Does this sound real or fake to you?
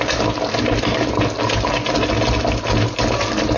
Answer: real